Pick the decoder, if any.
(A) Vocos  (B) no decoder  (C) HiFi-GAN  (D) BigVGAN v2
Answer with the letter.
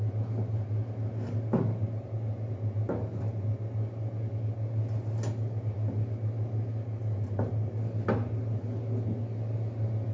B